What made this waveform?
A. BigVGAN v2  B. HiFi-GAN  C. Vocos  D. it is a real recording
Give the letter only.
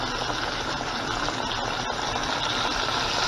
D